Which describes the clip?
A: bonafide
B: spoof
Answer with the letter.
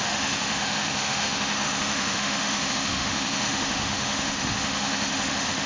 B